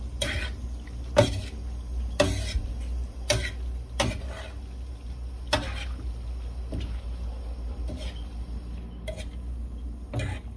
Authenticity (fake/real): real